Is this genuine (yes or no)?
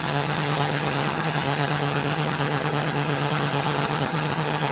no